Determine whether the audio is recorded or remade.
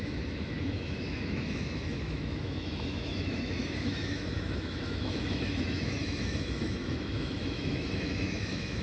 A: remade